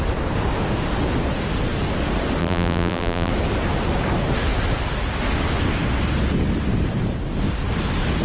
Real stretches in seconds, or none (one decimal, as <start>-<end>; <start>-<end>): 0.0-2.4; 3.3-8.2